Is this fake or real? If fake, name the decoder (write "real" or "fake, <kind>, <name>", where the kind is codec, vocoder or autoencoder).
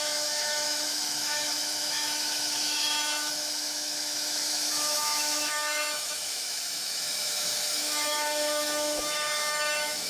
fake, autoencoder, DAC-VAE